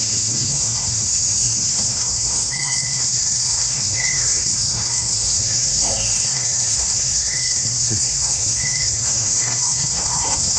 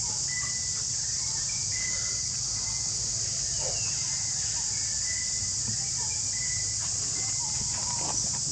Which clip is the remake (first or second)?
first